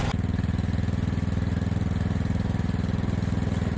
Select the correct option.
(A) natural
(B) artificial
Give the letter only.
A